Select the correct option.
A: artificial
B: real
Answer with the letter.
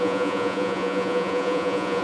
A